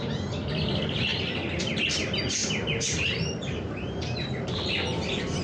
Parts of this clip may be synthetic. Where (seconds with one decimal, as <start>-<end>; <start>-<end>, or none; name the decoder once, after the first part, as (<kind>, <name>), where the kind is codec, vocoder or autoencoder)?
2.4-4.6 (vocoder, BigVGAN v2)